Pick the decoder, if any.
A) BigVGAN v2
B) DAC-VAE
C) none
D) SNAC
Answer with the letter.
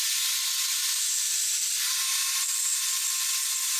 C